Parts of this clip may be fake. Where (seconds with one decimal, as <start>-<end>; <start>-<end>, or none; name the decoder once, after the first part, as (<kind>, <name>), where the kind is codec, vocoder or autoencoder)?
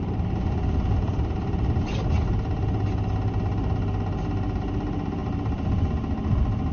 none